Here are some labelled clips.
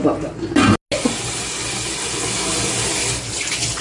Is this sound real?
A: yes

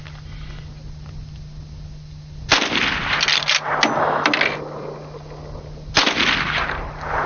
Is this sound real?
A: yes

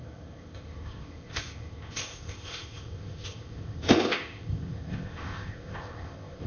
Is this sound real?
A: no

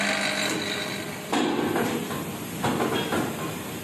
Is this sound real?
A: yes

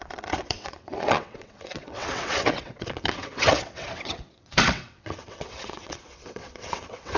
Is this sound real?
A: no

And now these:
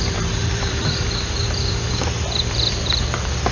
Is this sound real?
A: no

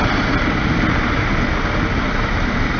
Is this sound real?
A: yes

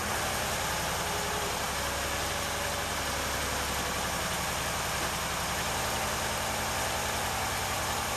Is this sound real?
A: yes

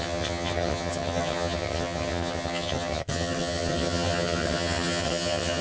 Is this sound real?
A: no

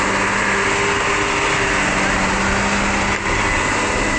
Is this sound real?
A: yes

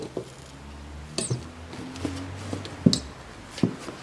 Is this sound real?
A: yes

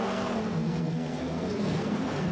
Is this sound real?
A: no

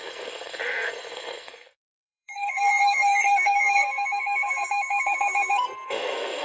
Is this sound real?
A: no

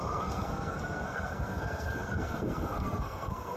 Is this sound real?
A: no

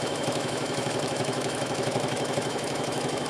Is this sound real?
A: no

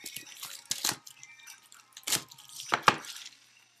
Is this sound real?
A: yes